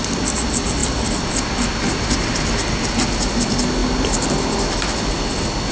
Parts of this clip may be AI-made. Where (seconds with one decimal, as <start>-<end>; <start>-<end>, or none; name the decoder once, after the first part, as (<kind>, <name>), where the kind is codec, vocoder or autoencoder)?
none